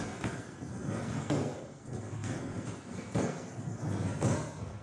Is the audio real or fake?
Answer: fake